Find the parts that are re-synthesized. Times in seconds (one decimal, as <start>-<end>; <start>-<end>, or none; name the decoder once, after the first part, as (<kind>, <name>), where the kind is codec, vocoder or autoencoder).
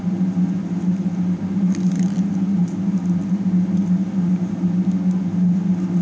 none